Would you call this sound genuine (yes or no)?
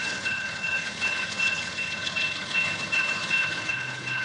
no